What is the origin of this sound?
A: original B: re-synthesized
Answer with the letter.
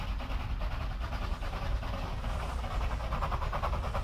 A